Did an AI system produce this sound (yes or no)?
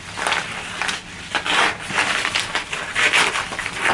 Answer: no